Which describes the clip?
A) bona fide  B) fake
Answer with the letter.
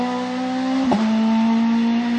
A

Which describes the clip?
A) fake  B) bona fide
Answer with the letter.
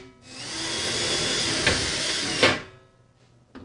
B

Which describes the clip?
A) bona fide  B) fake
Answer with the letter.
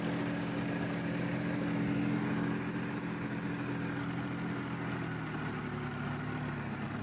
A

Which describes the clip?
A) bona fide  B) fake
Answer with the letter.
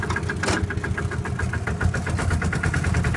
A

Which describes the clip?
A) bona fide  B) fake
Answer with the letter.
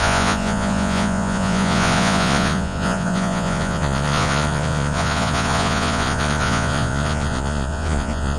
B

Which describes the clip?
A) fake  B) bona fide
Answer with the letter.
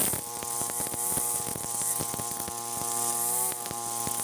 B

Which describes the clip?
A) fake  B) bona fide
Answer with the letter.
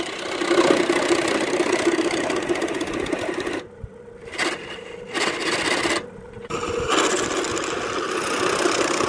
B